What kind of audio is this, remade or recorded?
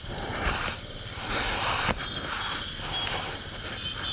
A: recorded